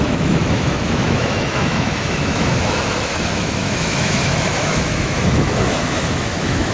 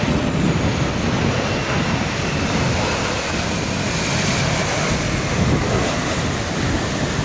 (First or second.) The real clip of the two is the second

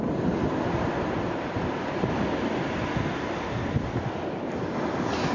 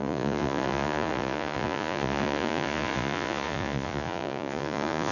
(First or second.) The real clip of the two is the first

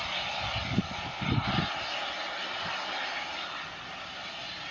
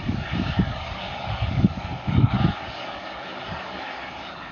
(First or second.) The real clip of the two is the first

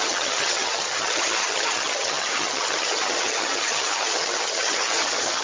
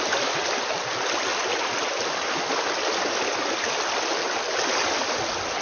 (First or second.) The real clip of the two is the second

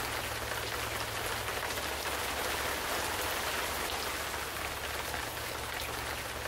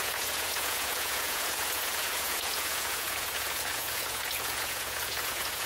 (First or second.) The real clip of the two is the first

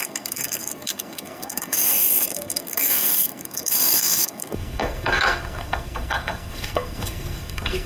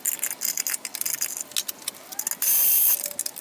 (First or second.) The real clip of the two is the second